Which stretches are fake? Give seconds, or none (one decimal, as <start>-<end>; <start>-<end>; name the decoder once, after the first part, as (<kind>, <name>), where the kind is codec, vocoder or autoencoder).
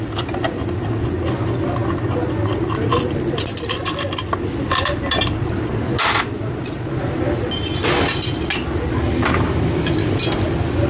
none